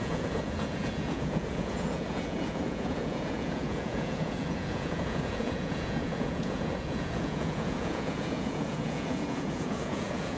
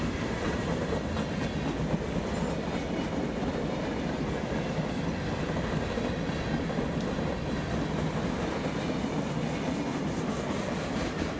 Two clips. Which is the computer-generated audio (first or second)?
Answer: first